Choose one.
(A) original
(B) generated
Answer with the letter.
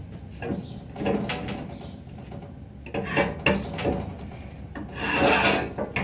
A